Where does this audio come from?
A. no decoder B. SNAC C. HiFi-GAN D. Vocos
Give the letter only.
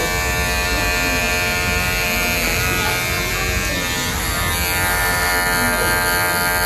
A